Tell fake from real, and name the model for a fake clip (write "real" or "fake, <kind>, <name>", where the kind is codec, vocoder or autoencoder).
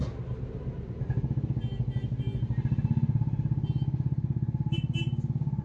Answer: real